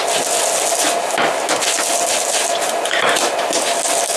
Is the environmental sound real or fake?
real